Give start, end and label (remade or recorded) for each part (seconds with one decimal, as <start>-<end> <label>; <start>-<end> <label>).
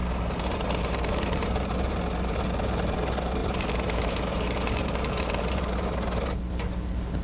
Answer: 0.0-1.9 remade; 1.9-3.4 recorded; 3.4-5.6 remade; 5.6-7.2 recorded